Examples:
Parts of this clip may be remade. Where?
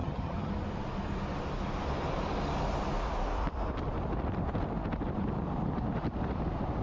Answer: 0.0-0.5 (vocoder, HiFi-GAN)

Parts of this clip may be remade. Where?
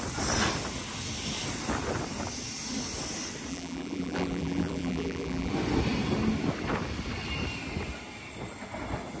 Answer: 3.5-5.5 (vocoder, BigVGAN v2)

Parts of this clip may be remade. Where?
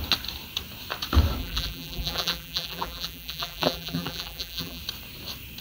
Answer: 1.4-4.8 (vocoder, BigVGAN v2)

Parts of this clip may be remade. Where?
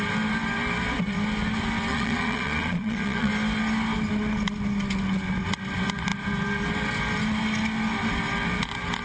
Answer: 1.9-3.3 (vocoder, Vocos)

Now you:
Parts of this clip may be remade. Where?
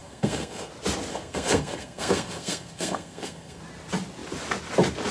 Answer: 0.0-0.7 (codec, SNAC); 1.1-3.6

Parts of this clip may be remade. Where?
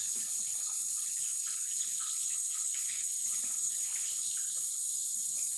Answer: 0.0-5.6 (codec, HILCodec)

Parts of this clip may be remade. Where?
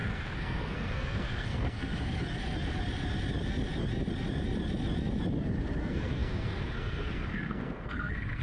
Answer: 0.0-1.9 (codec, SNAC); 5.8-8.4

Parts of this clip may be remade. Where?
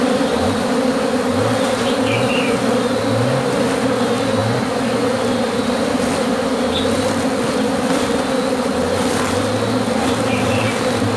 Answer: none